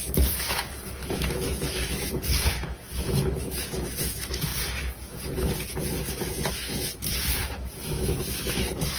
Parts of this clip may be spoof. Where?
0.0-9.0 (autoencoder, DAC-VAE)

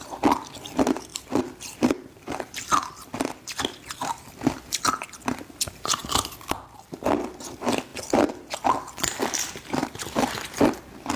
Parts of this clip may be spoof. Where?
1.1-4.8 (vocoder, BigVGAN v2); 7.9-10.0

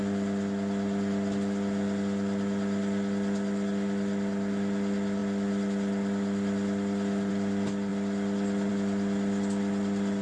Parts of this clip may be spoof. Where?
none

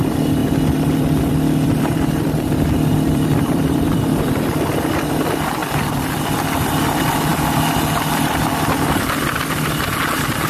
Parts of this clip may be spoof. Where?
0.4-4.3 (vocoder, BigVGAN v2); 5.6-6.2; 7.3-8.2

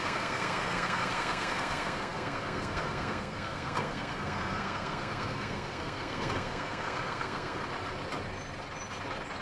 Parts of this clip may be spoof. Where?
0.0-7.6 (codec, SNAC)